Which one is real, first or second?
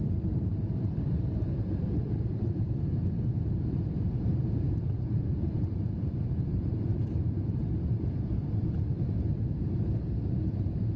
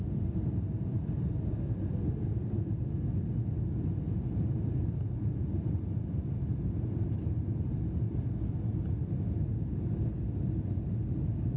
second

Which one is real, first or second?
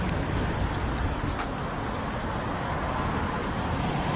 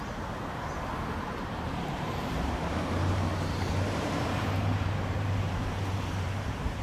first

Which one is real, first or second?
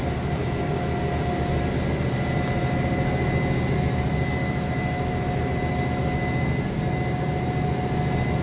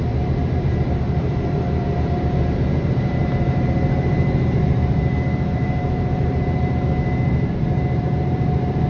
first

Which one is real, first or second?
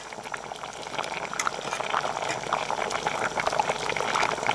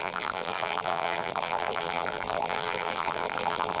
first